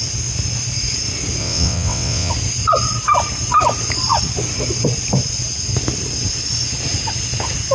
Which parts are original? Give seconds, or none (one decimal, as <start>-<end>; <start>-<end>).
0.0-1.4; 2.3-7.7